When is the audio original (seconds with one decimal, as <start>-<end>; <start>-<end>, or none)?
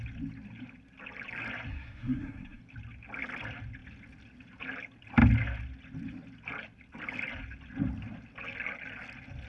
0.0-1.7; 2.6-9.5